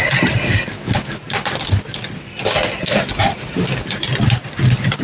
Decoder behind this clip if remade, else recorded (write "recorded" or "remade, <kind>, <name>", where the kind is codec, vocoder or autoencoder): recorded